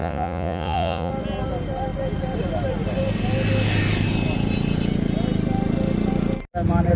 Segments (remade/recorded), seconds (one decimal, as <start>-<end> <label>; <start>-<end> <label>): 0.0-1.1 remade; 1.1-7.0 recorded